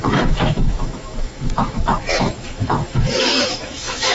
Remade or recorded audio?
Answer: remade